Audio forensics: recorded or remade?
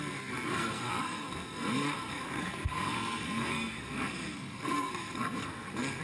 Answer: remade